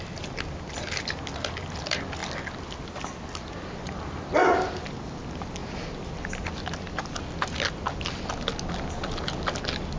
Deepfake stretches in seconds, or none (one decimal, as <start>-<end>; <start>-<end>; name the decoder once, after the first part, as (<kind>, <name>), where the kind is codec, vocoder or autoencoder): none